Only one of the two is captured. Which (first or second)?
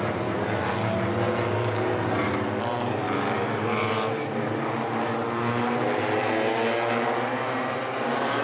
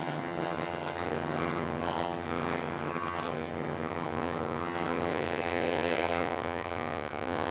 first